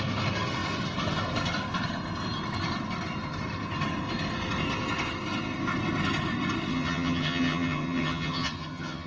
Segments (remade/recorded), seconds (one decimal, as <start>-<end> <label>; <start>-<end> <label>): 0.0-6.7 recorded; 6.7-9.1 remade